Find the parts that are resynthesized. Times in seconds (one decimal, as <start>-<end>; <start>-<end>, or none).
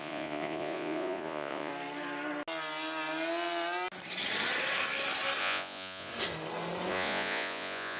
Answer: 0.0-1.7; 5.4-6.1; 6.9-8.0